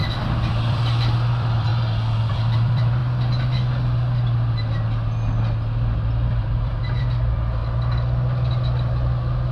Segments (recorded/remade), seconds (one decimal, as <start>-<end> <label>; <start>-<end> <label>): 0.0-1.7 remade; 1.7-2.3 recorded; 2.3-3.0 remade; 3.0-6.1 recorded; 6.1-7.6 remade; 7.6-9.5 recorded